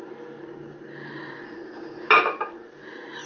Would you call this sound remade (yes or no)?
no